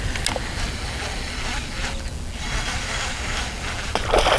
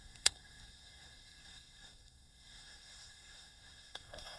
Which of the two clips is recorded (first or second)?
first